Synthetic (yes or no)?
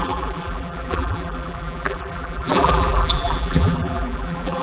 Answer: yes